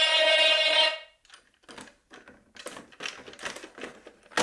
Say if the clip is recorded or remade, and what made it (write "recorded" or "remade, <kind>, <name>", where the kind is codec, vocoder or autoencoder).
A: recorded